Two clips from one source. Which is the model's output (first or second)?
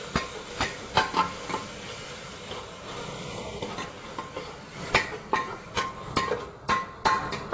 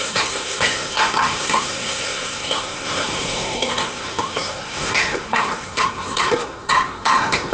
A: second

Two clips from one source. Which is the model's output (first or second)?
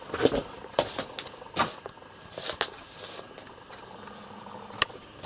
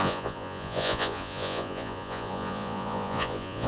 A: second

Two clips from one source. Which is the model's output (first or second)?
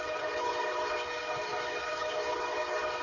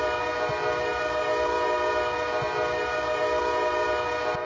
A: first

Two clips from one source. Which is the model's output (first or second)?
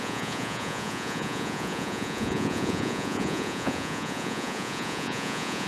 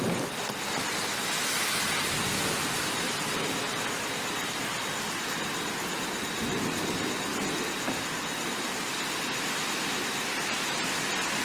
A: first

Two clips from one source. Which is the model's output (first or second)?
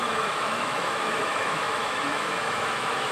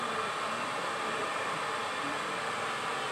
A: first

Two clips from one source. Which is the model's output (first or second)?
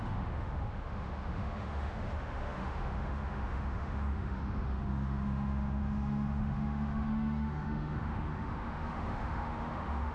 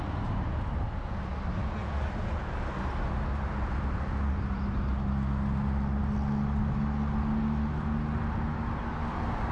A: first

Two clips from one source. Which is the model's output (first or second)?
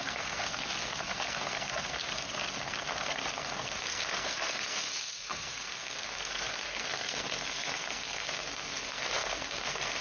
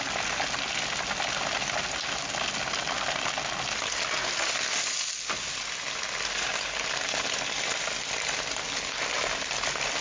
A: first